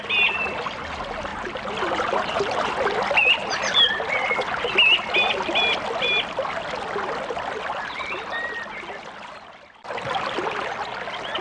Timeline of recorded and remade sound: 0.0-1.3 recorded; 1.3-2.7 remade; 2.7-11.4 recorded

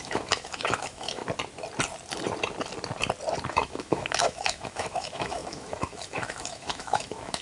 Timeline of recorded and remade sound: 0.0-1.2 remade; 1.2-3.5 recorded; 3.5-7.4 remade